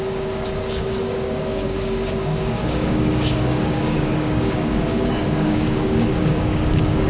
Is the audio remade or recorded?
remade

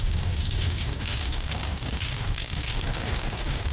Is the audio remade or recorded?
remade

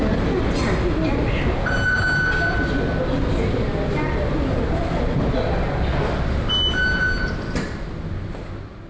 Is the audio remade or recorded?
recorded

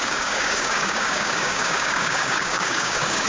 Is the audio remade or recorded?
remade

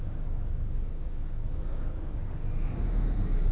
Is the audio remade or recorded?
remade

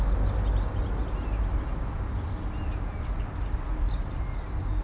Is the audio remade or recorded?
recorded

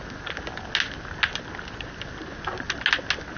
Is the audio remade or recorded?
recorded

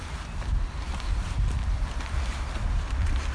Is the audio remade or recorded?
recorded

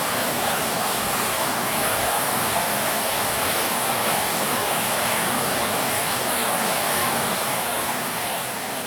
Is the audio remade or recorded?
remade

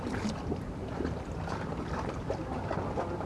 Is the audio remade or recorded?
recorded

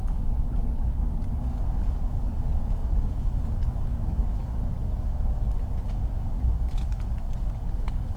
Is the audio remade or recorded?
remade